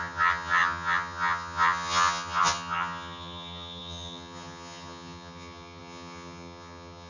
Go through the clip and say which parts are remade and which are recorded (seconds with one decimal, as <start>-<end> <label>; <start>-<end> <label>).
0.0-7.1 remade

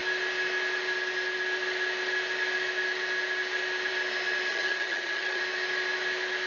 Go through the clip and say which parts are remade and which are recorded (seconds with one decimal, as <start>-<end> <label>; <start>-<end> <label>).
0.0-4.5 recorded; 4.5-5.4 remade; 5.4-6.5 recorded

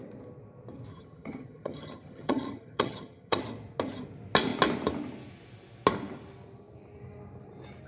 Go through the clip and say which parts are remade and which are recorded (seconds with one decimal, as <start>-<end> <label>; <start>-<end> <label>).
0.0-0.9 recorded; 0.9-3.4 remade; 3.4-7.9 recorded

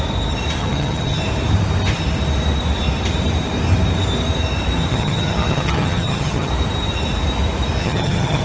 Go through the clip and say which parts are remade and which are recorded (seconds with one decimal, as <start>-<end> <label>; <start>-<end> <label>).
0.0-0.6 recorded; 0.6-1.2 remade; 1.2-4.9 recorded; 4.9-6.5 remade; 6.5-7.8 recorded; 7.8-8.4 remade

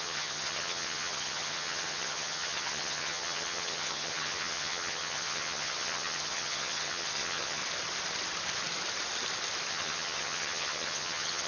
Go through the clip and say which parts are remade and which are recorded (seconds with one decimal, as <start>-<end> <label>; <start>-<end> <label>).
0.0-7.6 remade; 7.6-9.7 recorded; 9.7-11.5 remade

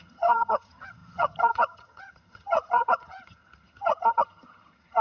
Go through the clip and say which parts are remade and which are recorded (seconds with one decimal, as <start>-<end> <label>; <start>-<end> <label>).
0.0-5.0 remade